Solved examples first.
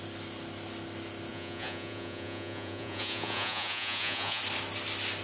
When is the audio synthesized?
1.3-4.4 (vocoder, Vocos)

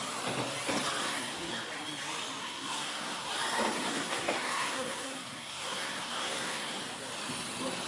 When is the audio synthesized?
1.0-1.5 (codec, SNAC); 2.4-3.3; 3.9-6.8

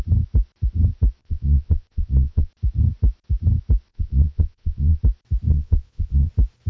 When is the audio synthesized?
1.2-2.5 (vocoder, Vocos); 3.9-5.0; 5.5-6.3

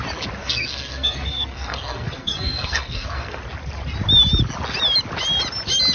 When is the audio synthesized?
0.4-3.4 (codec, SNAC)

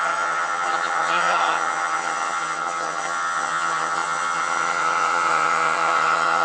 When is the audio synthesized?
0.0-6.4 (vocoder, HiFi-GAN)